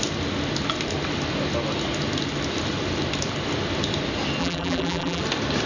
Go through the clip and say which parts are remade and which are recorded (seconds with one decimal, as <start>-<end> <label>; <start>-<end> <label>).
0.0-4.4 recorded; 4.4-5.2 remade; 5.2-5.7 recorded